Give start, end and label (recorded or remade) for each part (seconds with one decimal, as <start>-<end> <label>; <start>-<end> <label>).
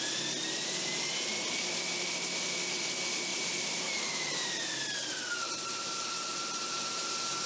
0.0-3.3 recorded; 3.3-7.1 remade; 7.1-7.5 recorded